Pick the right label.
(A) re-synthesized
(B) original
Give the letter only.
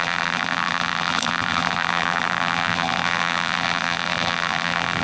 A